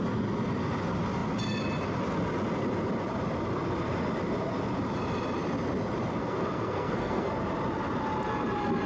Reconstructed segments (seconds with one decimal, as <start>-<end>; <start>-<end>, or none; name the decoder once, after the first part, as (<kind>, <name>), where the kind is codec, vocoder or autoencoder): 6.2-7.3 (codec, SNAC)